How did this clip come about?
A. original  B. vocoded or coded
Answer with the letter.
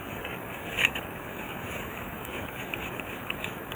B